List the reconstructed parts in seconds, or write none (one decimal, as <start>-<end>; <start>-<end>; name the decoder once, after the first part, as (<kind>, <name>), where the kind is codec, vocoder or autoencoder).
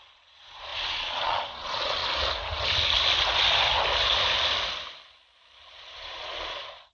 0.0-2.0 (vocoder, Vocos); 5.8-6.9